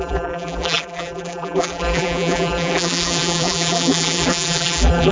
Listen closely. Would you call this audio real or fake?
fake